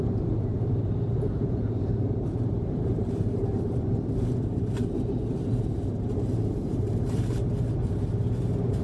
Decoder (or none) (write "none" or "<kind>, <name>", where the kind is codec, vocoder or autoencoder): vocoder, BigVGAN v2